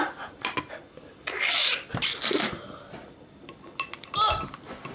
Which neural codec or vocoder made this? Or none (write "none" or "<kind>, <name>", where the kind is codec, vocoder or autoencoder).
none